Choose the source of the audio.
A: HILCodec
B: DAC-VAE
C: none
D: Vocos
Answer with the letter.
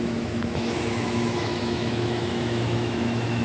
B